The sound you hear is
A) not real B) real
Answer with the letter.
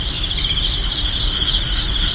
B